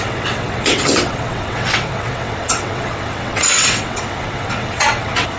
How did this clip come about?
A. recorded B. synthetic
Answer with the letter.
B